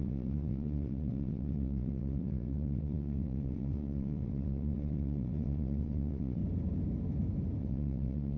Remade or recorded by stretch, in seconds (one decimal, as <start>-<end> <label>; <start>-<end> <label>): 0.0-6.4 remade; 6.4-7.6 recorded; 7.6-8.4 remade